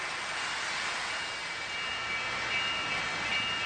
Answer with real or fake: real